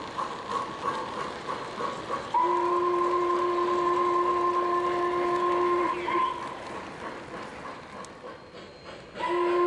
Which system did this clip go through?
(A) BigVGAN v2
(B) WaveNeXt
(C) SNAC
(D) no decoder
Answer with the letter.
D